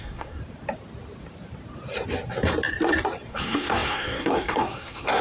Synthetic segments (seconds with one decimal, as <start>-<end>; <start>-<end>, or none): 0.0-0.4; 3.3-5.2